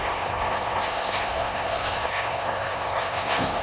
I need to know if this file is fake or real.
fake